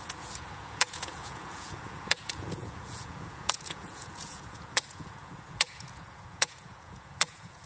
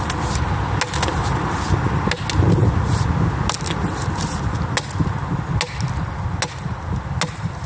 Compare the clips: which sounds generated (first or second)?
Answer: first